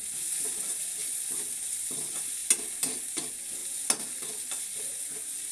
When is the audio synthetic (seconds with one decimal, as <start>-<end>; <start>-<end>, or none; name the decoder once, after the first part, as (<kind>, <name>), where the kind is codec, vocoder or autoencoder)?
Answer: none